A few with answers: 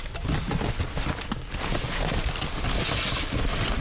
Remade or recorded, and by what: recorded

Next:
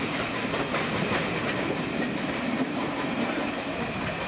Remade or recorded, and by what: recorded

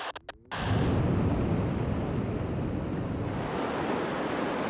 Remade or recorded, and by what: recorded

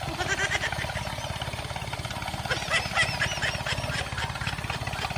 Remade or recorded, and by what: recorded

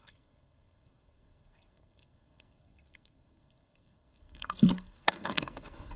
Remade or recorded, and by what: remade, codec, SNAC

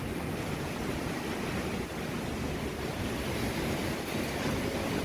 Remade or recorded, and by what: recorded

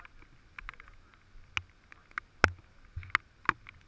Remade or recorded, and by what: recorded